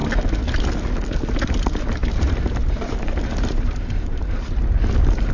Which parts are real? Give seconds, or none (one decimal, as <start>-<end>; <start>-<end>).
0.0-2.0